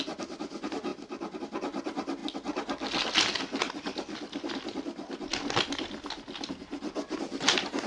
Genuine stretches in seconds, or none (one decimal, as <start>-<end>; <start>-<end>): 0.0-7.9